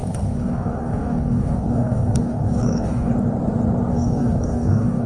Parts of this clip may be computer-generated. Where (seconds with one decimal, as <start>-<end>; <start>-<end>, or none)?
0.0-3.1; 3.9-5.1